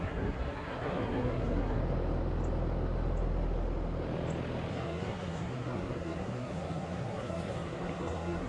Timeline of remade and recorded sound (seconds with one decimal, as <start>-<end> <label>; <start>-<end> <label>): 0.0-1.8 remade; 1.8-4.7 recorded; 4.7-8.5 remade